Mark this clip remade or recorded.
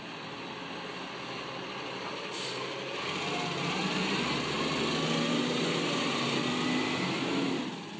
recorded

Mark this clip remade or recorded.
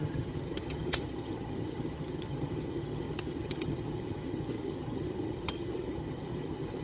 remade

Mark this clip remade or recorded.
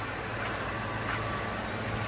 recorded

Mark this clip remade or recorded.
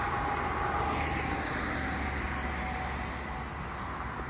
recorded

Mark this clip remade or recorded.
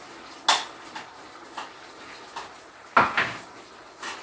recorded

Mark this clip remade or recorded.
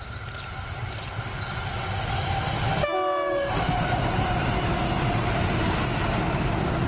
recorded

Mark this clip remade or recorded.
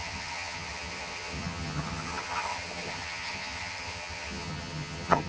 remade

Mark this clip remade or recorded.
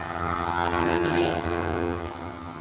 remade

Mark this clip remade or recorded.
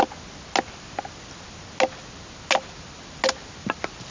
recorded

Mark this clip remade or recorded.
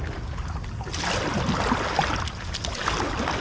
recorded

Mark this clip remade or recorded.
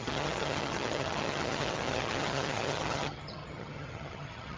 remade